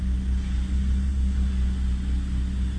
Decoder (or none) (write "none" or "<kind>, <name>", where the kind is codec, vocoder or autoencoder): none